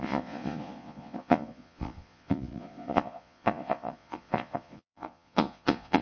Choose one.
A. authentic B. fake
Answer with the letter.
B